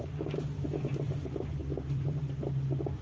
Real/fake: real